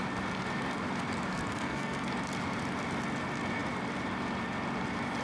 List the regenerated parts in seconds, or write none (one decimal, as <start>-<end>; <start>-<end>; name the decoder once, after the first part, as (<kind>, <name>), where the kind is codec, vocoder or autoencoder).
1.3-2.1 (codec, SNAC)